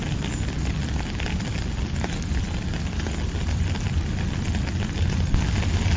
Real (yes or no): yes